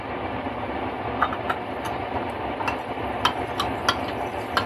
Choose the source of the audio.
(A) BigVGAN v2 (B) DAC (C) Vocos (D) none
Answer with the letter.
D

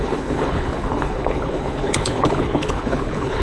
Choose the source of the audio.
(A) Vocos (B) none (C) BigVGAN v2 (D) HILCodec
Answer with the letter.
D